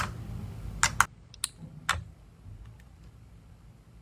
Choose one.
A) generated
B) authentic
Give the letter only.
B